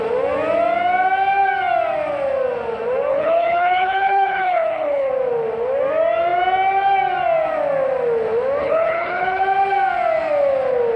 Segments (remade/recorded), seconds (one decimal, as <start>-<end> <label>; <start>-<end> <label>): 0.0-3.1 recorded; 3.1-5.1 remade; 5.1-8.6 recorded; 8.6-9.4 remade; 9.4-11.0 recorded